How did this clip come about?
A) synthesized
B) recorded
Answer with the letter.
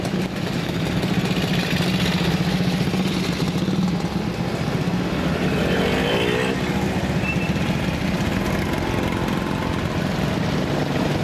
B